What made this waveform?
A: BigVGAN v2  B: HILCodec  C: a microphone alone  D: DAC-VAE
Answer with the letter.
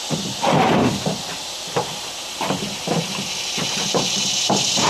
C